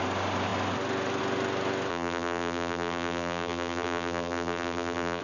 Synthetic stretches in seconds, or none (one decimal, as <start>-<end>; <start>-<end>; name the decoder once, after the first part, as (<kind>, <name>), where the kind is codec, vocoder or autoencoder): 1.9-5.2 (vocoder, BigVGAN v2)